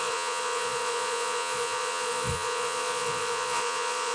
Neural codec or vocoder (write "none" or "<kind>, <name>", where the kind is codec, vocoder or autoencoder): vocoder, Vocos